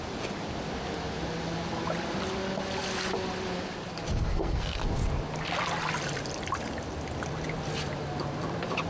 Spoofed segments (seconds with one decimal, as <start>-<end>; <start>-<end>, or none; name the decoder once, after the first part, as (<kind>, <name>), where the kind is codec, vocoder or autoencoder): 4.1-4.8 (codec, SNAC)